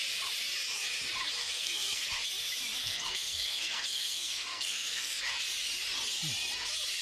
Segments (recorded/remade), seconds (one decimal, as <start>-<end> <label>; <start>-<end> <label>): 0.0-1.4 recorded; 1.4-2.1 remade; 2.1-2.8 recorded; 2.8-5.2 remade; 5.2-7.0 recorded